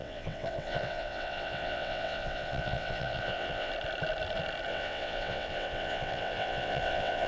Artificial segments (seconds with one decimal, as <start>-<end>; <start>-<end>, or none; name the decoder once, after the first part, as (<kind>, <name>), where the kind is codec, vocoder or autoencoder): 0.0-3.7 (vocoder, WaveNeXt); 4.7-7.3